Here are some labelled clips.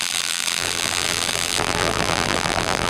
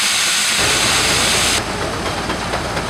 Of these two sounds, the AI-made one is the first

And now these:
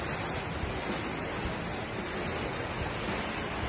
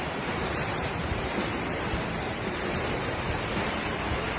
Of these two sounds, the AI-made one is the second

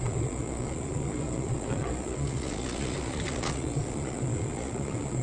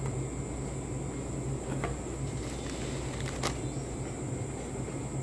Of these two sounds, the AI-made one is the first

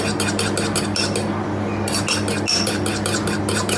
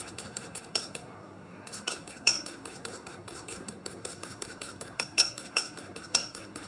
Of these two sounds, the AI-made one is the second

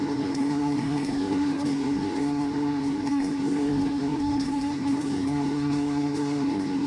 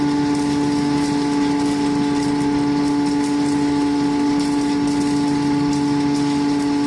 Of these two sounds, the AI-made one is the first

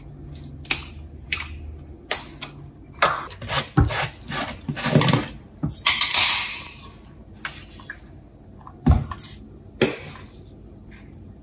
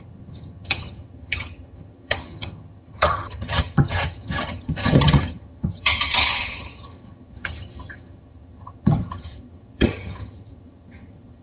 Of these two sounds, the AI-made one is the second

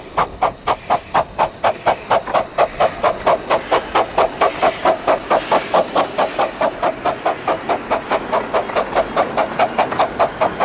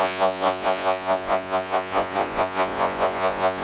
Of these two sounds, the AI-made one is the second